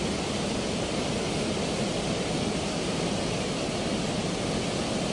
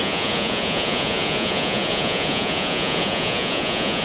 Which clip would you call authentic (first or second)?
first